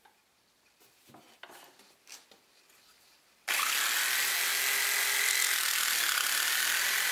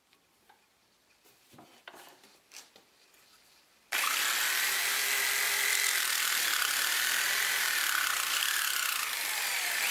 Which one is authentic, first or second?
first